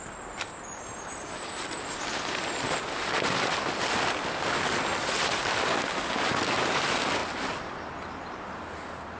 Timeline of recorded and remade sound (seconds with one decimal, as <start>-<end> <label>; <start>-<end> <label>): 0.0-9.2 recorded